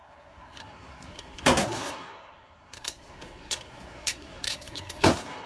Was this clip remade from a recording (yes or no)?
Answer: yes